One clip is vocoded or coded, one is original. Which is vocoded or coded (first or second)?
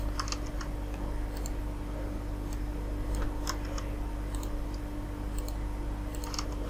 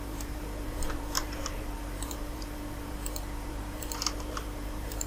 second